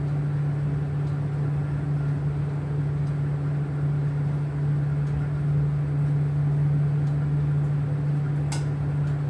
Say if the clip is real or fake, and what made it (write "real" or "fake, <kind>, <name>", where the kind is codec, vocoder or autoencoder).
real